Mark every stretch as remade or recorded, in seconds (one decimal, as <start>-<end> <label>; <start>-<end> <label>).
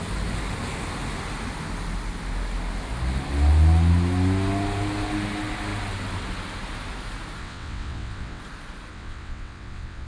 0.0-7.4 recorded; 7.4-8.4 remade; 8.4-8.9 recorded; 8.9-10.1 remade